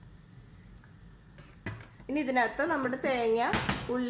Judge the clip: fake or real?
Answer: real